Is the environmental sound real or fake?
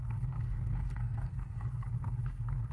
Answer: fake